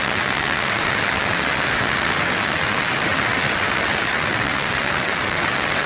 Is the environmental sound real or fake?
fake